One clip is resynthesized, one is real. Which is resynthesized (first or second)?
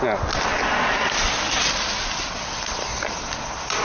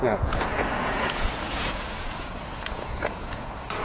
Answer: second